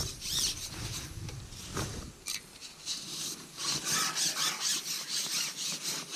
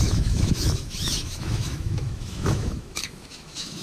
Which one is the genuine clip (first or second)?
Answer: first